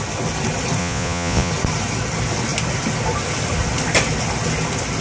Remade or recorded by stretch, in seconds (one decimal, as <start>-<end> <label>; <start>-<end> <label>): 0.0-0.8 recorded; 0.8-1.5 remade; 1.5-5.0 recorded